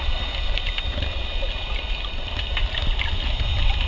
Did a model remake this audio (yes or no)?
no